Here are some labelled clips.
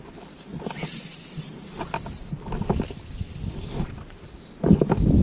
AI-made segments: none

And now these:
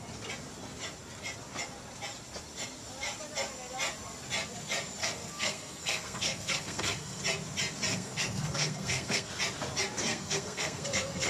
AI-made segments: 5.0-7.2 (codec, SNAC); 7.9-9.3; 10.1-11.3

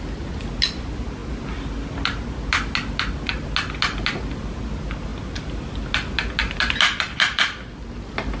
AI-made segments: none

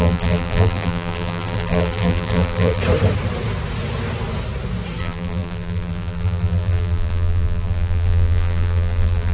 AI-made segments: 0.0-2.8 (vocoder, BigVGAN v2); 5.0-9.3

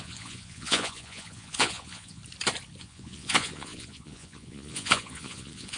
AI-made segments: 0.0-2.2 (vocoder, Vocos); 2.8-5.8

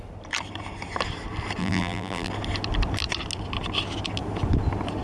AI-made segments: 1.6-2.3 (vocoder, BigVGAN v2)